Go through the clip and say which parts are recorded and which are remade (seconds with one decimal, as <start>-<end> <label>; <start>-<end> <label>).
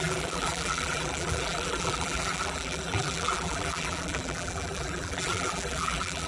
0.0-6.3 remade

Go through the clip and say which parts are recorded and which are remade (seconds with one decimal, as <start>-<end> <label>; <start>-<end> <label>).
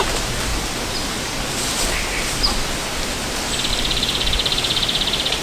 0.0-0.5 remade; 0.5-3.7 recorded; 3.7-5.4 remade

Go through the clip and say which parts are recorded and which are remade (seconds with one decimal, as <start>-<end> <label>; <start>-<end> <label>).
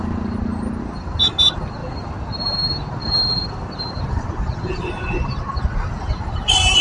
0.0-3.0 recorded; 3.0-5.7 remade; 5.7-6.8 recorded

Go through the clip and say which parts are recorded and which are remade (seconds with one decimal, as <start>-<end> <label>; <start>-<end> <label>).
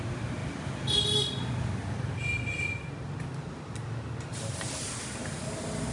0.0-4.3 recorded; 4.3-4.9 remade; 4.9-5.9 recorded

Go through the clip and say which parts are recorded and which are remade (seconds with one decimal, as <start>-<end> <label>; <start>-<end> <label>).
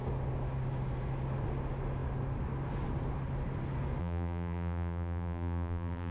0.0-4.0 recorded; 4.0-6.1 remade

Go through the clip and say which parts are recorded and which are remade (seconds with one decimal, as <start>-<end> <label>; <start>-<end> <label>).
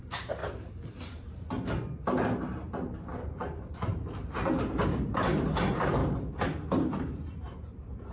0.0-6.0 remade; 6.0-7.0 recorded; 7.0-8.1 remade